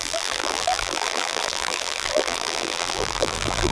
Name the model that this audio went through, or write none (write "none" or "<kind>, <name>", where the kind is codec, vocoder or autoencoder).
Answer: vocoder, BigVGAN v2